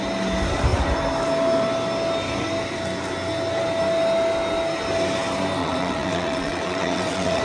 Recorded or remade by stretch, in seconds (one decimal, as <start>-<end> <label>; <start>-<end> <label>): 0.0-5.6 recorded; 5.6-7.4 remade